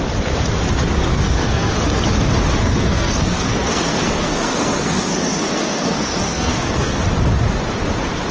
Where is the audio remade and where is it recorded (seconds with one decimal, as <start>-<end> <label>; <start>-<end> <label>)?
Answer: 0.0-1.1 recorded; 1.1-1.7 remade; 1.7-2.6 recorded; 2.6-7.0 remade; 7.0-8.3 recorded

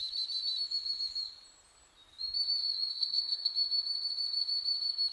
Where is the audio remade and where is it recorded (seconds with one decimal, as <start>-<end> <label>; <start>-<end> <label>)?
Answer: 0.0-2.9 recorded; 2.9-3.5 remade; 3.5-5.1 recorded